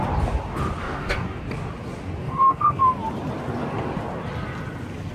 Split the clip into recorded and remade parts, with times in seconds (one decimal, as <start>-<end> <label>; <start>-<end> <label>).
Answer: 0.0-0.8 recorded; 0.8-1.4 remade; 1.4-2.2 recorded; 2.2-2.8 remade; 2.8-5.1 recorded